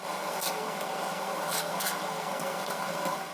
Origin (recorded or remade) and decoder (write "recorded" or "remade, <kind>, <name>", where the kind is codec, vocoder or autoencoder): remade, codec, SNAC